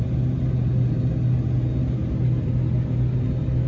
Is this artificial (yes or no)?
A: no